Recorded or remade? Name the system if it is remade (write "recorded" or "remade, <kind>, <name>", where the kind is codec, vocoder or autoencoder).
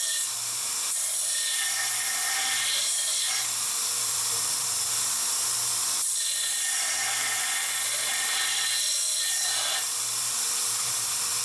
remade, vocoder, BigVGAN v2